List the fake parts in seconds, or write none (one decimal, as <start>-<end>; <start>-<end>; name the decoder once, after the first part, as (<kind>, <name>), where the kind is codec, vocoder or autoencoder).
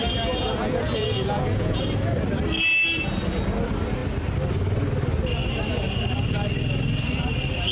0.4-1.8 (vocoder, Vocos)